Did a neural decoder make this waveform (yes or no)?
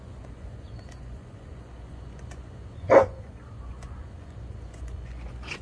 yes